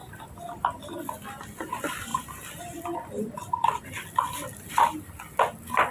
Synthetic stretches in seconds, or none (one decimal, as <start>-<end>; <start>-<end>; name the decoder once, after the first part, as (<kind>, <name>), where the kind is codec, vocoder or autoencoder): none